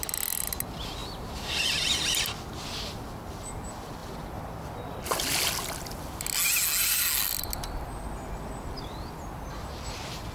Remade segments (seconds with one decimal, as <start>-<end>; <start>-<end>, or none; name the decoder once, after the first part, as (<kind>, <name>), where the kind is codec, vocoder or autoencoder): 1.0-1.6 (vocoder, BigVGAN v2)